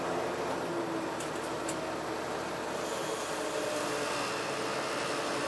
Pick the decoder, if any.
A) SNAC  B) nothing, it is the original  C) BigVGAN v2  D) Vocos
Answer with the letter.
B